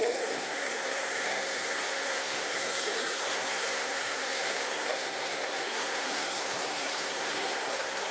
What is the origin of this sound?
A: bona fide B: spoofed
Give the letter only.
B